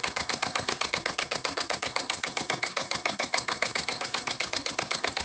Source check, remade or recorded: remade